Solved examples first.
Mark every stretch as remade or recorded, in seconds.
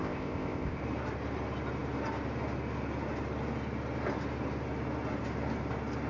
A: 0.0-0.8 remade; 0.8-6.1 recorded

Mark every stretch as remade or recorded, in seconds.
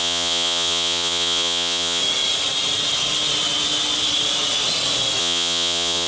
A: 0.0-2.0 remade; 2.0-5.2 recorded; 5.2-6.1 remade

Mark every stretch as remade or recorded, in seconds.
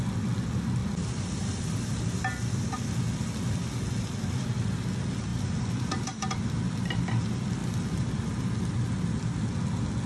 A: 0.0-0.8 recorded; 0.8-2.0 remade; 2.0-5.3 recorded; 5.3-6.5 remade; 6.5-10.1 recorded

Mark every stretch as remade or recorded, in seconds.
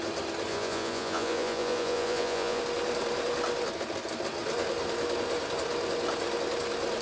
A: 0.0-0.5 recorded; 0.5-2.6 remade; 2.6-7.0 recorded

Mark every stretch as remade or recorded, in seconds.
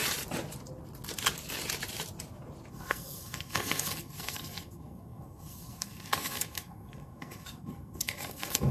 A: 0.0-2.7 recorded; 2.7-8.7 remade